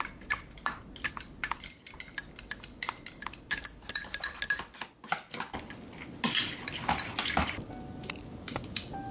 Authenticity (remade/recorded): recorded